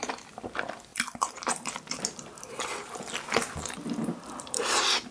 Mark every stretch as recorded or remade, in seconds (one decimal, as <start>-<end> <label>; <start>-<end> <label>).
0.0-5.1 remade